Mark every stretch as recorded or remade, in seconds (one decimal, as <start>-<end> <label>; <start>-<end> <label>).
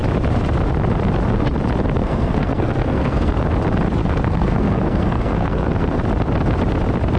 0.0-2.0 recorded; 2.0-3.3 remade; 3.3-4.0 recorded; 4.0-6.0 remade; 6.0-7.2 recorded